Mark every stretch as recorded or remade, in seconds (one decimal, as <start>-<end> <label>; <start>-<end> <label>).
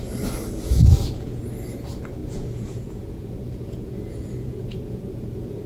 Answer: 0.0-0.8 recorded; 0.8-1.4 remade; 1.4-2.2 recorded; 2.2-5.7 remade